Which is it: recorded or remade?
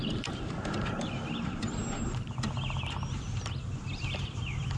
recorded